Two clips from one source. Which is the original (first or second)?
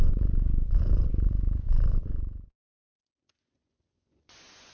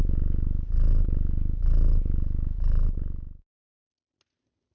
second